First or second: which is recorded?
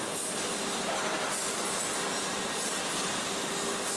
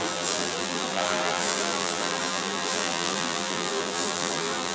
first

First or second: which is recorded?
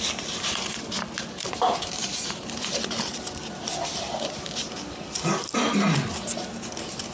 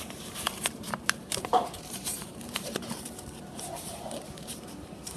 first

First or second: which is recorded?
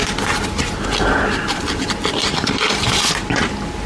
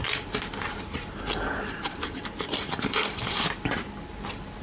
first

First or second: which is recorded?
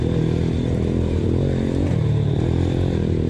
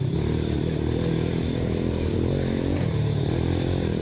first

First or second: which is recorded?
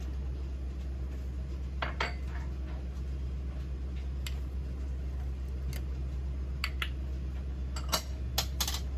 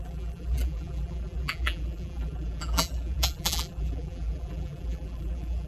first